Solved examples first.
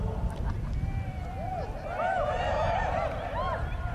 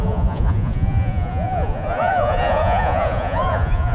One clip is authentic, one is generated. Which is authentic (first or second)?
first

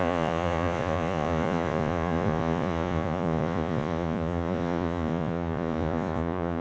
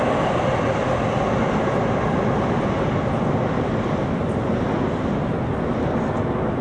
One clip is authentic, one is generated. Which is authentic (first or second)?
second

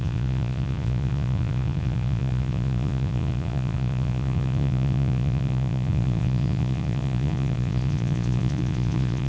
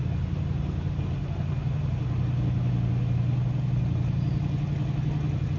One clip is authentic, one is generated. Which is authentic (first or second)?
second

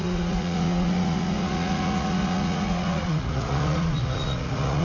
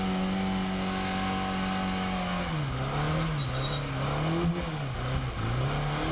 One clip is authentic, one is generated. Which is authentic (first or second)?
second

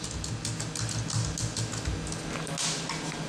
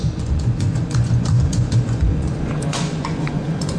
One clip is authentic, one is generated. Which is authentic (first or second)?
first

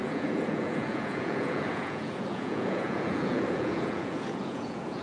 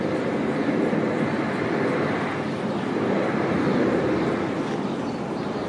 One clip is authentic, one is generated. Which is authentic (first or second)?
second